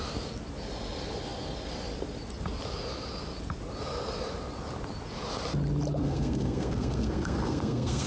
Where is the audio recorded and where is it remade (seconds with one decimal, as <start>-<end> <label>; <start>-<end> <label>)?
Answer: 0.0-6.0 recorded; 6.0-8.1 remade